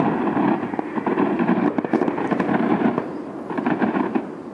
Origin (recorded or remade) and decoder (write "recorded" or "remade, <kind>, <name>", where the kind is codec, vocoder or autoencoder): remade, vocoder, BigVGAN v2